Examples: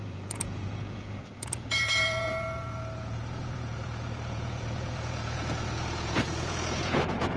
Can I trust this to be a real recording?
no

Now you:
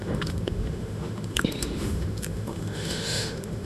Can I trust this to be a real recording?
no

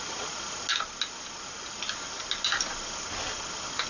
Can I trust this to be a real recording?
yes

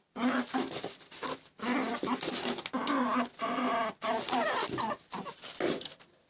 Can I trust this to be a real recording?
yes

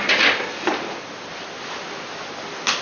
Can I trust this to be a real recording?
yes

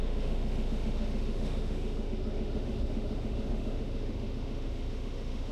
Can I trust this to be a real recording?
no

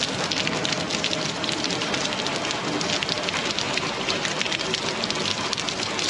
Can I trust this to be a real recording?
yes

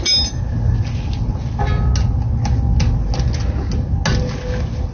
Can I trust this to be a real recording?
yes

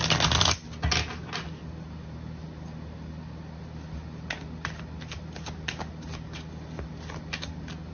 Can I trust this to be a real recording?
yes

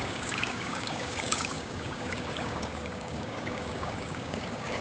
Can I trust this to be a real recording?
no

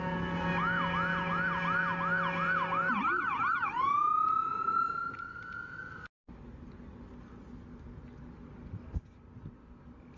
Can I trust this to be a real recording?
yes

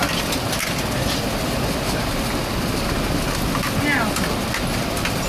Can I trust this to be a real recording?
yes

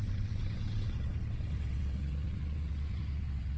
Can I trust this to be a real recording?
no